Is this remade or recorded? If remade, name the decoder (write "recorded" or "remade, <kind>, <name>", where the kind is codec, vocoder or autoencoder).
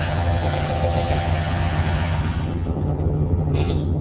remade, vocoder, HiFi-GAN